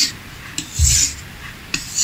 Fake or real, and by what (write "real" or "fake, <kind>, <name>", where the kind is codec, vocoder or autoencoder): real